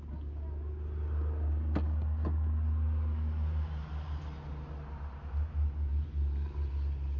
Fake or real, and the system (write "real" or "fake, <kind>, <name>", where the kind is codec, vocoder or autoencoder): real